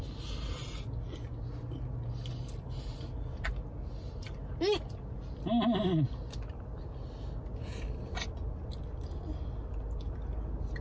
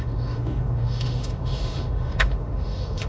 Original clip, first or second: first